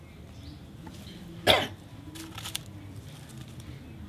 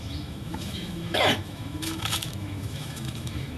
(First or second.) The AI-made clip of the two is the second